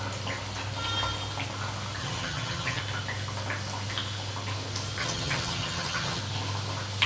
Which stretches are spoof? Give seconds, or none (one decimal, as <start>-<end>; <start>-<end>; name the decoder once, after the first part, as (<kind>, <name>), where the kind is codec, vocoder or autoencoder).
2.0-2.8 (vocoder, HiFi-GAN); 5.0-6.2